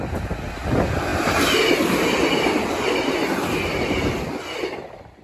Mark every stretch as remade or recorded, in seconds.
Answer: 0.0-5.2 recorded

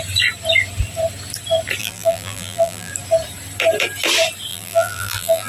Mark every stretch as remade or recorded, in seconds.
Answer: 0.0-1.8 recorded; 1.8-2.9 remade; 2.9-4.5 recorded; 4.5-5.5 remade

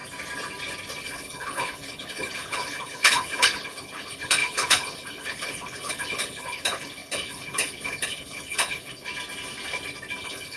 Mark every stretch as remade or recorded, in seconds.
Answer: 0.0-1.0 recorded; 1.0-9.1 remade; 9.1-10.2 recorded; 10.2-10.6 remade

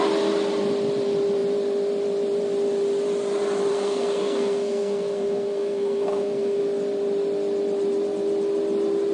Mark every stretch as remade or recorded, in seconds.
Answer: 0.0-3.7 recorded; 3.7-6.6 remade; 6.6-9.1 recorded

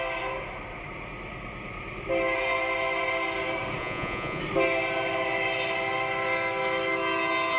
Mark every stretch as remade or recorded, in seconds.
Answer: 0.0-3.8 recorded; 3.8-4.4 remade; 4.4-7.6 recorded